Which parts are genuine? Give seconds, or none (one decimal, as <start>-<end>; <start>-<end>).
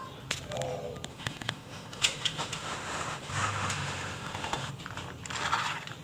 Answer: 0.0-1.1; 4.7-6.0